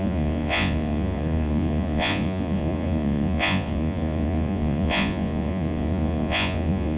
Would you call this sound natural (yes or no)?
no